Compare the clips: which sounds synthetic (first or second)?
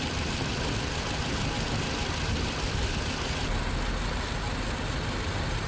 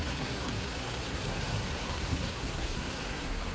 second